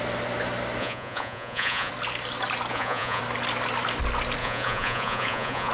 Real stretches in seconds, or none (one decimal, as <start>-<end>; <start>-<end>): 0.0-0.8; 1.9-2.7; 3.2-4.4